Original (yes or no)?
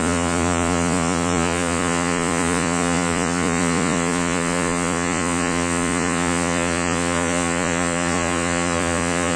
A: no